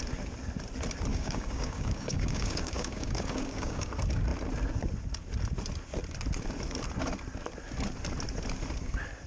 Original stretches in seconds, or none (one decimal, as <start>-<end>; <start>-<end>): 0.0-1.1; 3.9-9.3